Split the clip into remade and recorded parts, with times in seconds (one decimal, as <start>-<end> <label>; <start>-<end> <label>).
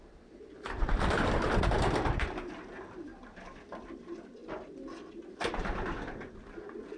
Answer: 0.0-7.0 recorded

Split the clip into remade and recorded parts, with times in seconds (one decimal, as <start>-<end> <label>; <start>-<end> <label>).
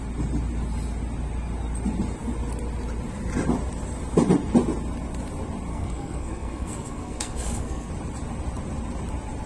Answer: 0.0-5.7 recorded; 5.7-7.9 remade; 7.9-9.5 recorded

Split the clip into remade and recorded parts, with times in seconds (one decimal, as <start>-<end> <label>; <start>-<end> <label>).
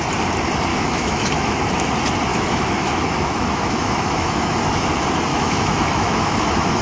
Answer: 0.0-0.7 recorded; 0.7-1.5 remade; 1.5-2.3 recorded; 2.3-4.6 remade; 4.6-5.3 recorded; 5.3-6.8 remade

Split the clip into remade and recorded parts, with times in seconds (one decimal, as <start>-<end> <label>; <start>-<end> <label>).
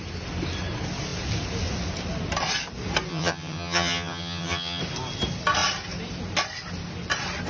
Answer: 0.0-3.1 recorded; 3.1-4.8 remade; 4.8-7.5 recorded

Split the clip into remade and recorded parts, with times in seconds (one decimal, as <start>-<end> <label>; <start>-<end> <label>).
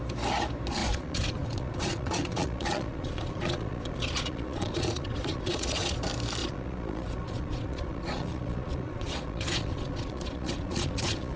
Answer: 0.0-0.8 recorded; 0.8-6.0 remade; 6.0-6.4 recorded; 6.4-11.4 remade